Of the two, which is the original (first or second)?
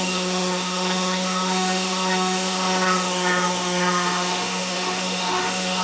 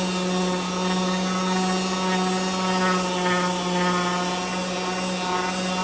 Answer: second